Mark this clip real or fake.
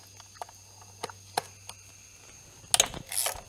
real